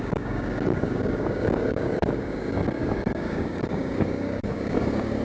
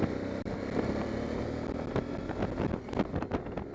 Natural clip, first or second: second